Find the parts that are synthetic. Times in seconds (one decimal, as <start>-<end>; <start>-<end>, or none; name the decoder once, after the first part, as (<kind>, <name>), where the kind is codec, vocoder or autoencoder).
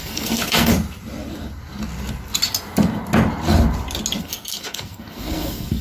0.0-0.7 (codec, SNAC); 4.2-5.8